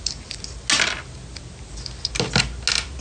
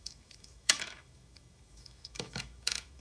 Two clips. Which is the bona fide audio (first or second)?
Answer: first